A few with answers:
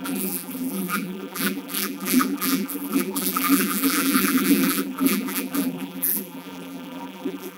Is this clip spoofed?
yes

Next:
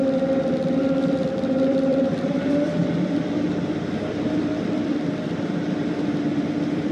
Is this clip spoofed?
yes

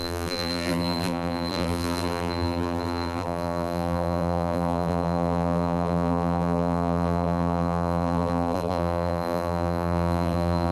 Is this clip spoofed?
yes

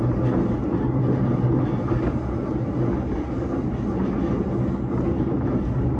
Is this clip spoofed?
no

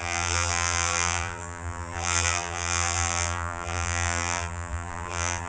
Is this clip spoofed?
yes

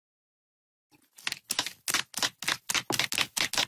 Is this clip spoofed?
no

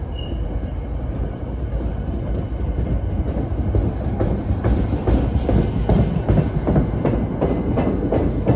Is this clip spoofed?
no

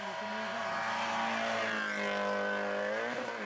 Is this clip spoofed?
no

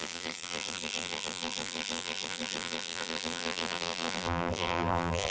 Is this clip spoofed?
yes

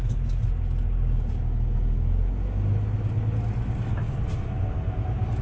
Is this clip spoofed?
no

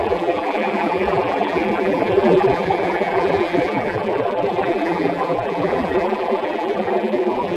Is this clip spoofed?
yes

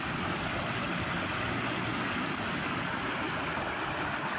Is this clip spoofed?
no